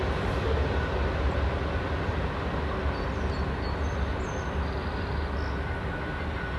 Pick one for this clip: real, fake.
real